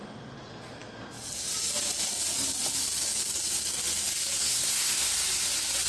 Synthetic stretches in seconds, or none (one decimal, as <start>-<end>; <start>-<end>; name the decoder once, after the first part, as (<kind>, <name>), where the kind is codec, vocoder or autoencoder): 4.4-5.1 (codec, SNAC)